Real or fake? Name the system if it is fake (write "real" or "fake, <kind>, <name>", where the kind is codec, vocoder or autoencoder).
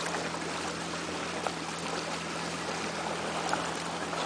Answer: real